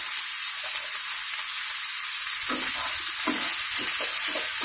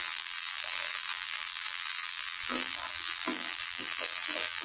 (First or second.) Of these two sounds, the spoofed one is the second